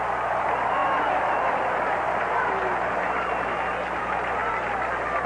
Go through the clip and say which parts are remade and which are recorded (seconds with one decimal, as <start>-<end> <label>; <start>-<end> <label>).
0.0-5.3 recorded